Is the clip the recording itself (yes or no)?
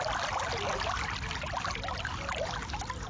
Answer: yes